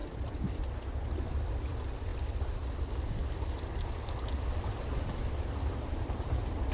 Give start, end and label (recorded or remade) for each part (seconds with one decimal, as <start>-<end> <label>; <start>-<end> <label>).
0.0-6.7 recorded